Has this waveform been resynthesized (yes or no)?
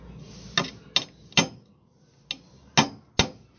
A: no